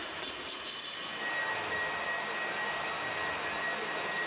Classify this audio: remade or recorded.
recorded